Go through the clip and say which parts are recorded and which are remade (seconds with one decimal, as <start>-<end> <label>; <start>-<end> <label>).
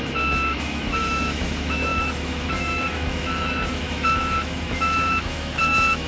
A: 0.0-6.1 remade